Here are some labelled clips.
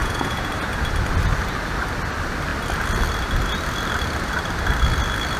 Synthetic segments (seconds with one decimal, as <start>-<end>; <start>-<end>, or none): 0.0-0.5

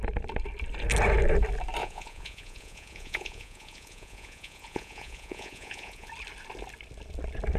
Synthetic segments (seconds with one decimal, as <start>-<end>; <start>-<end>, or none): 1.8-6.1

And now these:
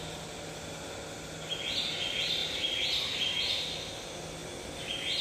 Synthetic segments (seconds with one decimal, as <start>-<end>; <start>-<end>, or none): none

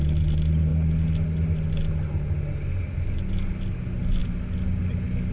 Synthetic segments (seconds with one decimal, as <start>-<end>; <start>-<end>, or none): none